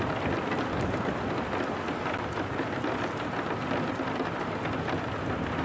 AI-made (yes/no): no